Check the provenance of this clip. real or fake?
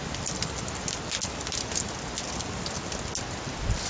real